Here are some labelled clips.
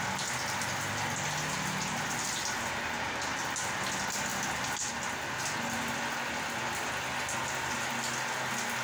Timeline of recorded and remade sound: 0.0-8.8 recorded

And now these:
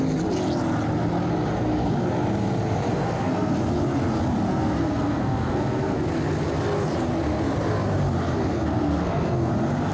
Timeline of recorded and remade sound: 0.0-2.9 recorded; 2.9-3.5 remade; 3.5-4.5 recorded; 4.5-6.0 remade; 6.0-8.5 recorded; 8.5-9.5 remade; 9.5-9.9 recorded